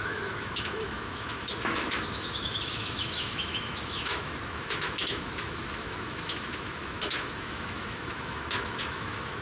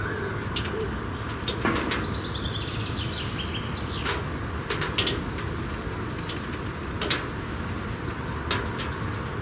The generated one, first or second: first